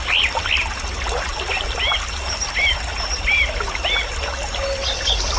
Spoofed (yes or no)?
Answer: no